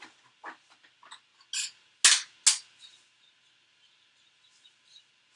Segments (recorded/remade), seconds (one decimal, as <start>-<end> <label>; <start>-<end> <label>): 0.0-5.4 recorded